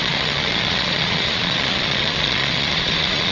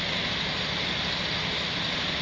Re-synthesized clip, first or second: first